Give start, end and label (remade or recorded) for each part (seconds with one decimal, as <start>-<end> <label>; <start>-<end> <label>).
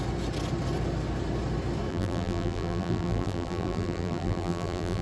0.0-1.9 recorded; 1.9-5.0 remade